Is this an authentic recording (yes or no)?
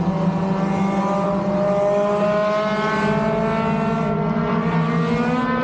yes